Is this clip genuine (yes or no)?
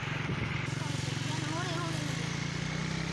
yes